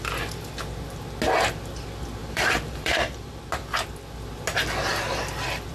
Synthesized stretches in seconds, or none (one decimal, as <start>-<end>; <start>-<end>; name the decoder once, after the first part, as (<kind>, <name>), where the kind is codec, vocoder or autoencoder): 2.2-3.4 (vocoder, BigVGAN v2)